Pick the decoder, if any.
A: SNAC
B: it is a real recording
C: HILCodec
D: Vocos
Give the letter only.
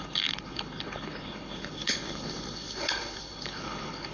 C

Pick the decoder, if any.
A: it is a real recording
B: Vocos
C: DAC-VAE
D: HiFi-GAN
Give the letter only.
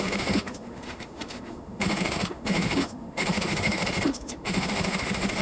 C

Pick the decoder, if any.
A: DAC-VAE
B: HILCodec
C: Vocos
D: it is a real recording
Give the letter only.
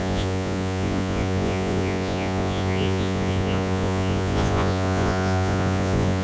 C